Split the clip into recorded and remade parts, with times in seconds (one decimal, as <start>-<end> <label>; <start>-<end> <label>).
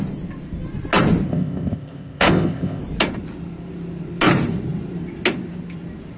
0.0-1.3 recorded; 1.3-2.8 remade; 2.8-6.2 recorded